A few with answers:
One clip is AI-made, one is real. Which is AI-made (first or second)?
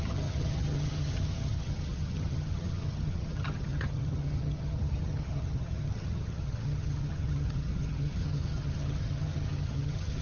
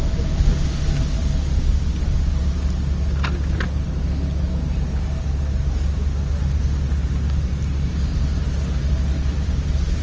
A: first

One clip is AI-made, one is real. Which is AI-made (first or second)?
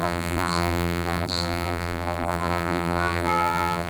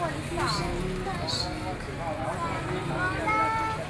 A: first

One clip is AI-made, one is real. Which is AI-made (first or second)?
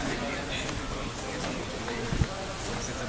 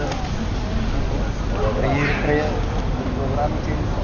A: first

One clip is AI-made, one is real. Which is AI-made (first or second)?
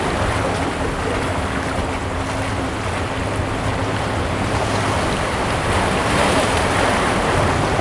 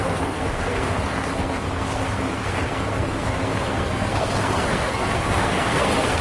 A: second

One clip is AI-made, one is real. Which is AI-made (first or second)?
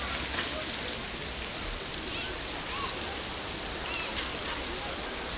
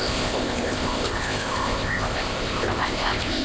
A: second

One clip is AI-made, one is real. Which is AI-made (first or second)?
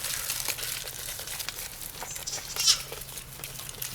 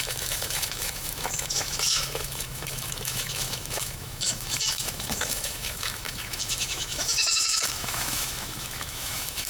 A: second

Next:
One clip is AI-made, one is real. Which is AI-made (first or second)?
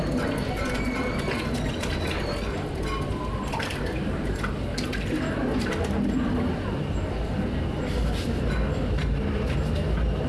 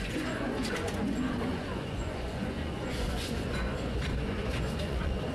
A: second